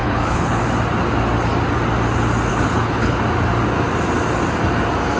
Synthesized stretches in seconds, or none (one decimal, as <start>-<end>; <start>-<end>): 0.0-0.6; 2.5-3.2